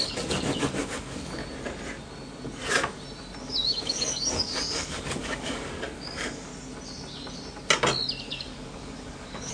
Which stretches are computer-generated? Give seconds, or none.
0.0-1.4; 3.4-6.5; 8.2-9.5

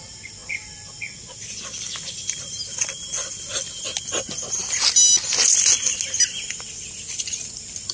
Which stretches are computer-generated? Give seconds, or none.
none

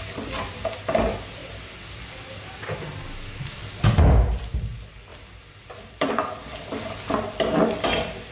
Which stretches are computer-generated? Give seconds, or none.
none